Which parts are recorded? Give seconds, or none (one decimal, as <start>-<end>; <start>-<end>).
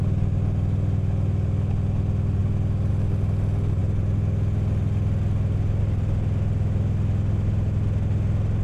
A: 0.0-8.6